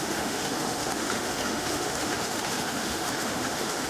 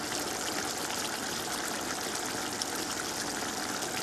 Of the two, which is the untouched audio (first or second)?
second